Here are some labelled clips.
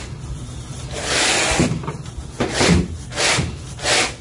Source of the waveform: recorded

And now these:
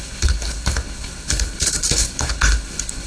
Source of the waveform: remade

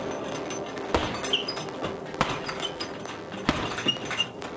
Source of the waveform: recorded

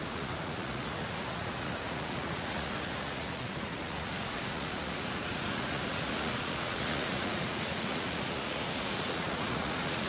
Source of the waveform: remade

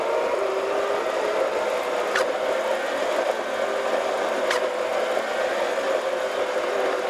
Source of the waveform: recorded